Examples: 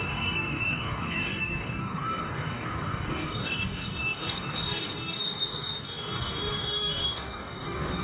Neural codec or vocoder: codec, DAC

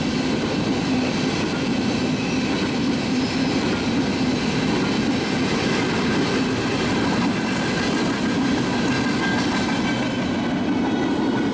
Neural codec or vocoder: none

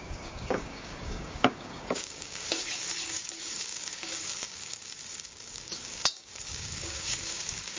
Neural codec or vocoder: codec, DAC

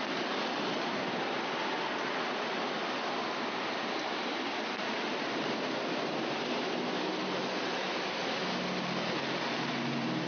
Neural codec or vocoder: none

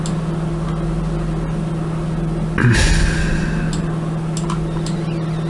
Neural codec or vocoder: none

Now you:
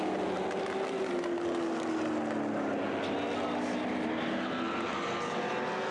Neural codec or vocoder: none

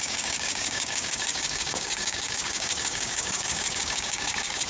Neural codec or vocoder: codec, DAC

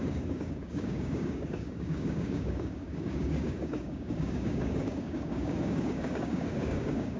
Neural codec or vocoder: codec, DAC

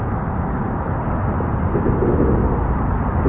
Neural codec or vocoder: none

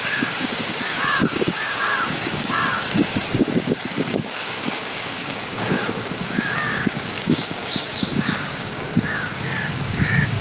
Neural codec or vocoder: codec, DAC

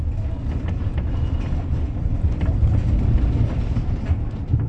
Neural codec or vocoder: none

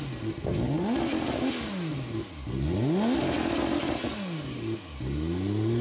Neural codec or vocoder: none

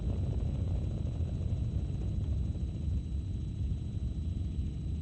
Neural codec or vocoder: none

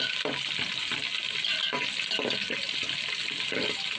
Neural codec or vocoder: none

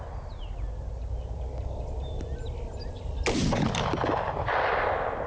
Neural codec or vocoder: none